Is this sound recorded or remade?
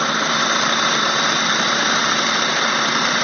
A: remade